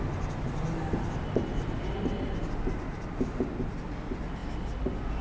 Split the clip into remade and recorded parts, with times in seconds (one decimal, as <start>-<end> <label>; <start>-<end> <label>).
0.0-5.2 recorded